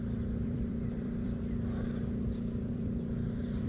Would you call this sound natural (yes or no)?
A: no